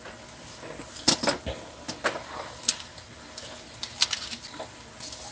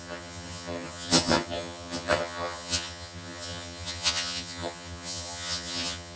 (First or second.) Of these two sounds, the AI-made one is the second